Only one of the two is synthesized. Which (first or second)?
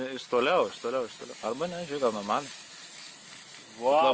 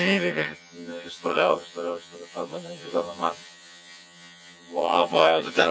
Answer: second